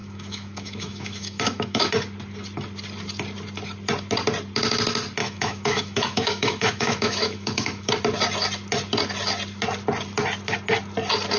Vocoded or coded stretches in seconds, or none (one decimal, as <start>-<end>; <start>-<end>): 0.0-1.9; 5.2-7.9